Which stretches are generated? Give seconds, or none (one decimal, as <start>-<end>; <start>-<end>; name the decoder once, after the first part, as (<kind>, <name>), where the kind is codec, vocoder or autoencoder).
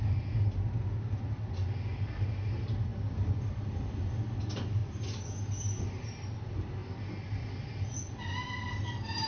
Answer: none